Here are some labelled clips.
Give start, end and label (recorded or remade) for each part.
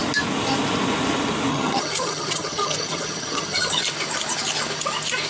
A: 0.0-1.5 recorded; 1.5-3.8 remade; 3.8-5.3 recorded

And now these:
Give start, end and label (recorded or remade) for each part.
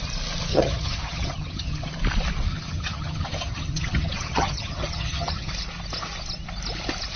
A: 0.0-0.5 recorded; 0.5-1.9 remade; 1.9-2.5 recorded; 2.5-5.5 remade; 5.5-7.2 recorded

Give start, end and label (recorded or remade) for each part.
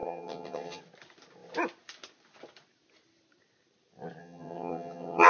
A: 0.0-0.8 remade; 0.8-4.2 recorded; 4.2-5.3 remade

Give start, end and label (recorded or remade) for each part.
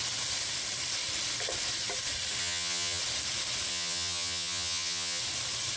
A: 0.0-2.4 recorded; 2.4-3.0 remade; 3.0-3.7 recorded; 3.7-5.2 remade; 5.2-5.8 recorded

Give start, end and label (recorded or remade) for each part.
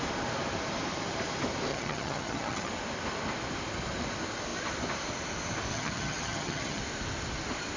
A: 0.0-1.7 recorded; 1.7-2.7 remade; 2.7-5.7 recorded; 5.7-6.8 remade; 6.8-7.8 recorded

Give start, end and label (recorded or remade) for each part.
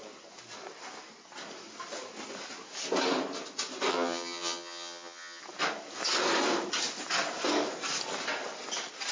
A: 0.0-3.9 recorded; 3.9-5.4 remade; 5.4-9.1 recorded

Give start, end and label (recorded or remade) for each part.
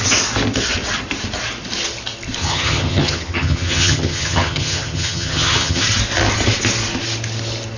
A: 0.0-2.4 recorded; 2.4-5.8 remade; 5.8-7.8 recorded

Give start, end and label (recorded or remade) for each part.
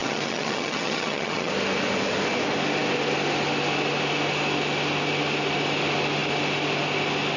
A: 0.0-1.5 remade; 1.5-7.4 recorded